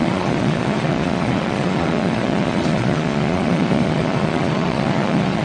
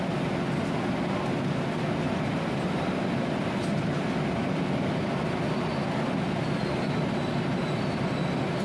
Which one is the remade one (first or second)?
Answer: first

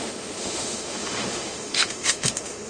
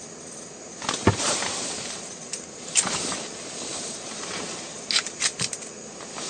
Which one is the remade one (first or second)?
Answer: first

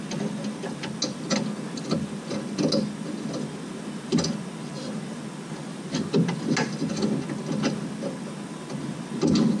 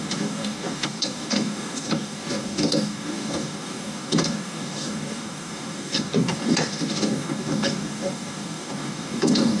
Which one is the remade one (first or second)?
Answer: second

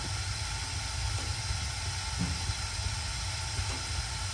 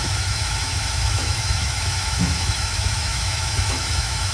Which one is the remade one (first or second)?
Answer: second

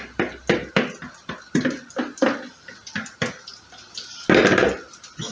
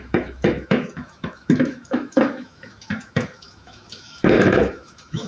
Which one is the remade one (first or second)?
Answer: second